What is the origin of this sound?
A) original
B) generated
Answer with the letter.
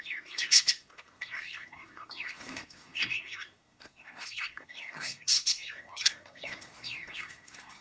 B